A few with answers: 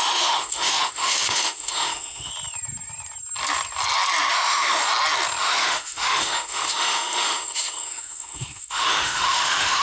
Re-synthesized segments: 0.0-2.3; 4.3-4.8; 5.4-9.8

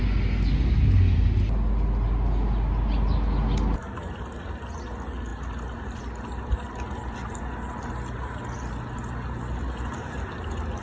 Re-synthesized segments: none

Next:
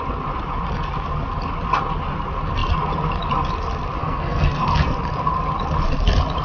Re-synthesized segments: 4.0-4.8

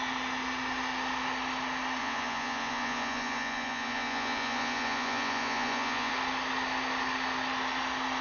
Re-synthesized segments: 2.0-6.1